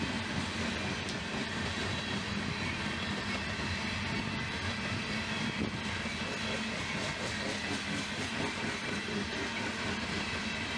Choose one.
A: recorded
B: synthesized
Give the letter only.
A